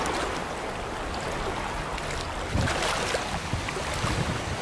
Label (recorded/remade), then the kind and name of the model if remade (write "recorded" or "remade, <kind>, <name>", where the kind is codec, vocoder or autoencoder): recorded